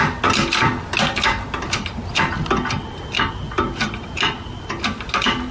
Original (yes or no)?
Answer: yes